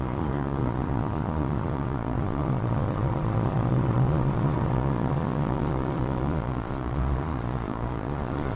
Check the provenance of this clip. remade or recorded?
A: remade